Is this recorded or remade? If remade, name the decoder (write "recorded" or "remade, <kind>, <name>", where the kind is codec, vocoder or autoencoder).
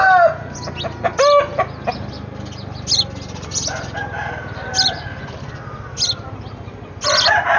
recorded